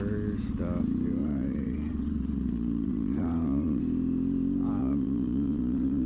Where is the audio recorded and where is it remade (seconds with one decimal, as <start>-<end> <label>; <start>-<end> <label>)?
0.0-1.2 recorded; 1.2-3.8 remade; 3.8-4.8 recorded; 4.8-6.1 remade